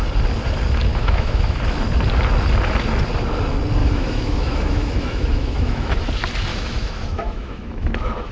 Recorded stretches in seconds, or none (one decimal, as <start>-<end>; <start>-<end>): 0.0-0.9; 1.6-3.8; 5.9-6.5